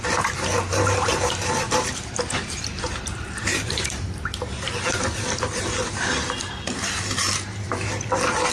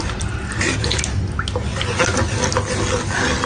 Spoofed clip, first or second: first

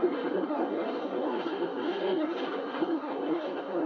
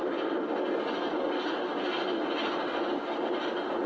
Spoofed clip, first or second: first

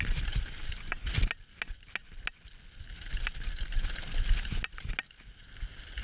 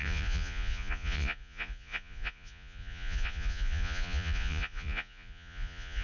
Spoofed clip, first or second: second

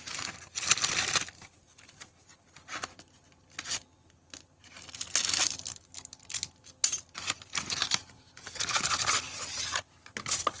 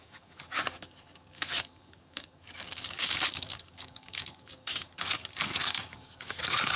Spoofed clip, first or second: second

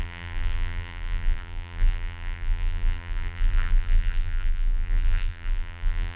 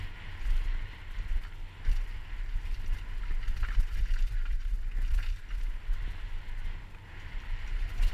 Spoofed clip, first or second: first